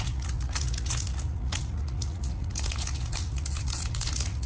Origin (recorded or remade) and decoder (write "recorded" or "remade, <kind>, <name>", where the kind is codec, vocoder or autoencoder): remade, vocoder, Vocos